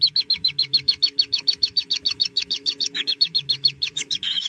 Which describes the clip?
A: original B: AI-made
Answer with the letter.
B